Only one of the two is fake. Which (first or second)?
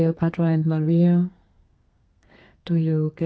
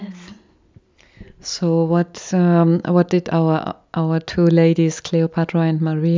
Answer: first